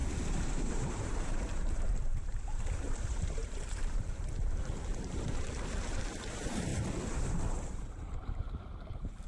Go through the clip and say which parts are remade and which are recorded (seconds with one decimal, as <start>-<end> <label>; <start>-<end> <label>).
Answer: 0.0-0.9 recorded; 0.9-6.7 remade; 6.7-7.7 recorded; 7.7-9.3 remade